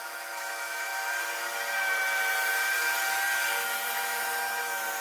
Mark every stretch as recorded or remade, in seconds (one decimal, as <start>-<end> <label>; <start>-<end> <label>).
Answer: 0.0-0.9 remade; 0.9-3.7 recorded; 3.7-5.0 remade